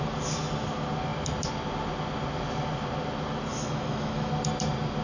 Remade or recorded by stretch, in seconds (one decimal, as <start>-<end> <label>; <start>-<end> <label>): 0.0-3.5 recorded; 3.5-4.3 remade; 4.3-5.0 recorded